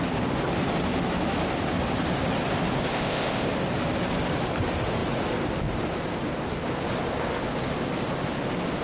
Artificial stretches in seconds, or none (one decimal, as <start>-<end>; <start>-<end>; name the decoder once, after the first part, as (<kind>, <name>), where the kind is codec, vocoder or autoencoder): 2.9-3.5 (codec, ZipCodec)